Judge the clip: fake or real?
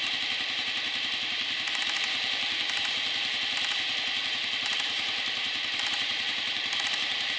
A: fake